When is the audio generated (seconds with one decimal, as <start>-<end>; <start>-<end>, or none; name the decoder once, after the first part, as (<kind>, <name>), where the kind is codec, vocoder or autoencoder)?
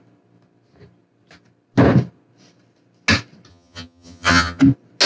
3.5-4.6 (vocoder, HiFi-GAN)